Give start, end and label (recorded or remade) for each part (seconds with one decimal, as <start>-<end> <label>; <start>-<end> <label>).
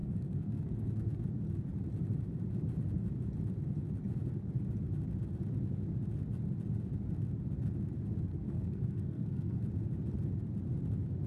0.0-1.2 remade; 1.2-8.3 recorded; 8.3-9.6 remade; 9.6-11.3 recorded